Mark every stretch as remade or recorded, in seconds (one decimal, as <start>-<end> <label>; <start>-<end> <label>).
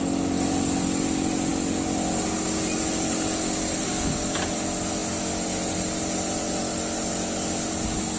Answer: 0.0-8.2 recorded